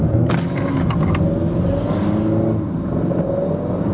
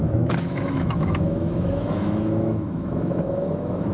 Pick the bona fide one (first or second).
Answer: first